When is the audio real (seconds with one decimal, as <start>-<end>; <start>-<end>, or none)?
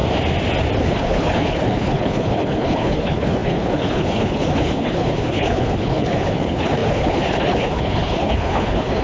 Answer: 0.0-0.8